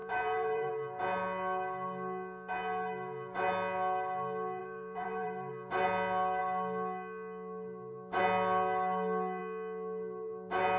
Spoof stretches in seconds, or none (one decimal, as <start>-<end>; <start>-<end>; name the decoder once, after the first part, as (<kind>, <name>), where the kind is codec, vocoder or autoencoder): 0.0-0.7 (vocoder, BigVGAN v2); 4.6-5.5